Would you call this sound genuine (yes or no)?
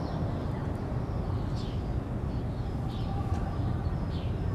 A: yes